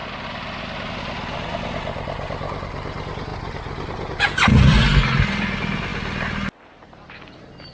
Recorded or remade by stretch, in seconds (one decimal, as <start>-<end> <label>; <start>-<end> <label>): 0.0-7.7 recorded